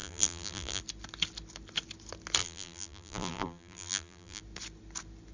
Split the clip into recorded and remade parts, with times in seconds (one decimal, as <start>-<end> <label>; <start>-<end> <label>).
0.0-0.8 remade; 0.8-2.4 recorded; 2.4-4.4 remade; 4.4-5.3 recorded